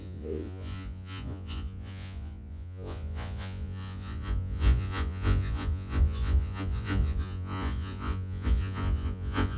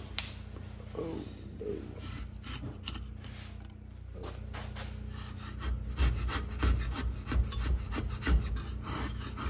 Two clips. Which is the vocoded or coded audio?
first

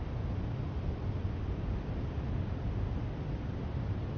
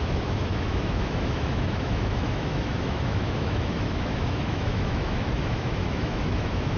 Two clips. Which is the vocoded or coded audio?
second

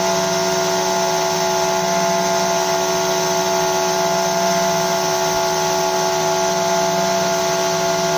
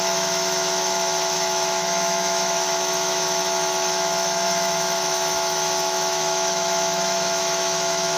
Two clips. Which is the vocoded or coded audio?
second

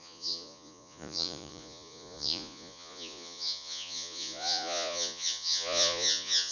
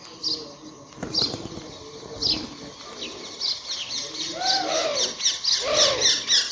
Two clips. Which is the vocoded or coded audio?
first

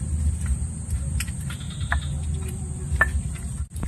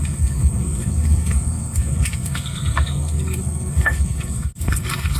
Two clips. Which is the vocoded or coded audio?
second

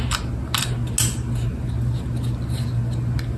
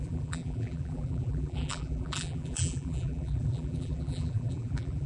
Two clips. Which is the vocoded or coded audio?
second